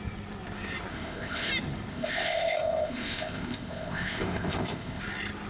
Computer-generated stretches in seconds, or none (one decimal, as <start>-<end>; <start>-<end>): 0.9-1.5; 1.9-5.0